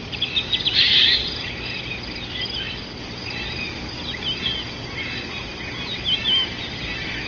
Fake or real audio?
real